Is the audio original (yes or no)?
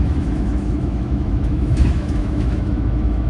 no